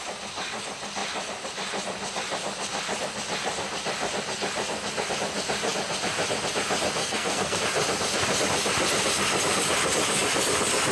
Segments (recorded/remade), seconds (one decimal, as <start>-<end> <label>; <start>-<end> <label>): 0.0-7.0 recorded; 7.0-7.6 remade; 7.6-10.9 recorded